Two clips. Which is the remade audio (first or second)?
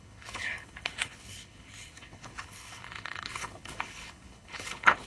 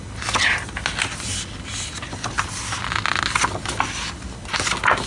first